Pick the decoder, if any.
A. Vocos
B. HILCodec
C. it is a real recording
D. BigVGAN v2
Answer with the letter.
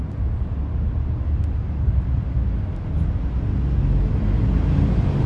C